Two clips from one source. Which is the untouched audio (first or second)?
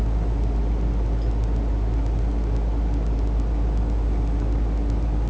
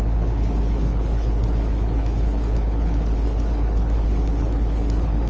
first